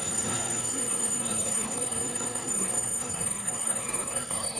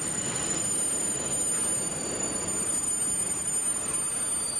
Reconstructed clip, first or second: first